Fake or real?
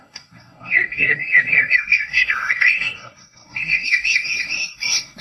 fake